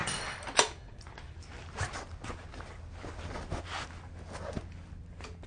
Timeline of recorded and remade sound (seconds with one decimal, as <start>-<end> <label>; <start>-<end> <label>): 0.0-5.5 recorded